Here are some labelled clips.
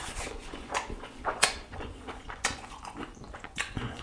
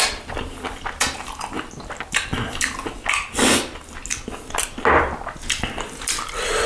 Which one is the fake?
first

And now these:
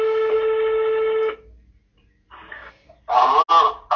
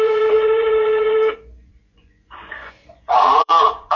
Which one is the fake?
second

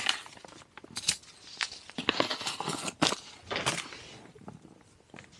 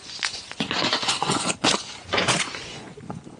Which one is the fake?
second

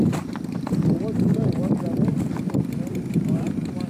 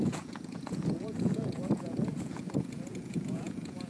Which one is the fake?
second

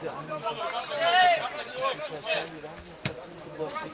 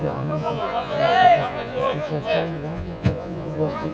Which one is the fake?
second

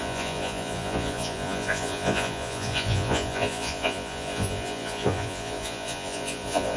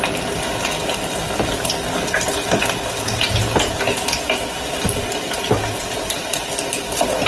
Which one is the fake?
first